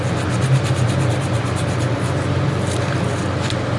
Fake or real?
real